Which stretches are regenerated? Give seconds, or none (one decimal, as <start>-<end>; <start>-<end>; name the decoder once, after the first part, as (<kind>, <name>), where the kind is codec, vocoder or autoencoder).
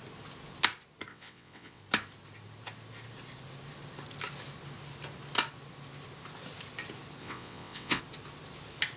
1.1-1.8 (vocoder, WaveNeXt); 7.2-8.0